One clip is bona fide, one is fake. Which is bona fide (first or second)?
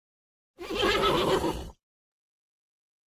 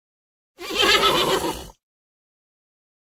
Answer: second